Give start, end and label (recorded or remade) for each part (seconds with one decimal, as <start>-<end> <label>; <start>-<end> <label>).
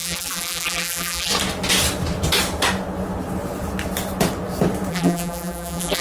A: 0.0-1.3 remade; 1.3-4.9 recorded; 4.9-6.0 remade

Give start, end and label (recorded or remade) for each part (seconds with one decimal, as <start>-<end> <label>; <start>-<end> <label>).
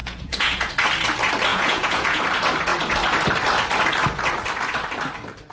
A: 0.0-0.7 remade; 0.7-1.5 recorded; 1.5-2.2 remade; 2.2-5.5 recorded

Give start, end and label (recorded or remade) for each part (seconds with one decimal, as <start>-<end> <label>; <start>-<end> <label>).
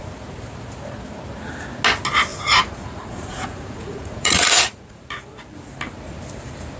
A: 0.0-2.3 recorded; 2.3-5.0 remade; 5.0-6.8 recorded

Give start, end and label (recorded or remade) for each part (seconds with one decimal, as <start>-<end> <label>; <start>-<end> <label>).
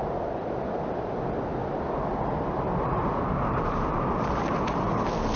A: 0.0-5.4 recorded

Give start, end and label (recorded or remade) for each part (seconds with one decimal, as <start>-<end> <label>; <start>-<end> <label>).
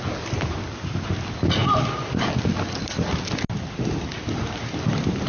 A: 0.0-5.3 recorded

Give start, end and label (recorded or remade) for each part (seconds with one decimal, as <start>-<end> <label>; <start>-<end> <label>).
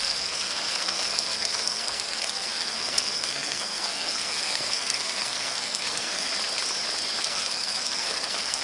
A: 0.0-6.3 remade; 6.3-7.2 recorded; 7.2-8.6 remade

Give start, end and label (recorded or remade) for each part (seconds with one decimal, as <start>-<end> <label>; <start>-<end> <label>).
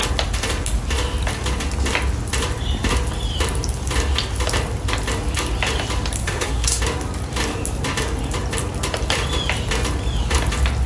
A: 0.0-6.2 recorded; 6.2-6.8 remade; 6.8-10.9 recorded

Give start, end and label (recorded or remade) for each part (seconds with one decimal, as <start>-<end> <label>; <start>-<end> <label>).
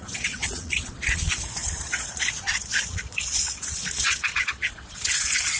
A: 0.0-5.6 remade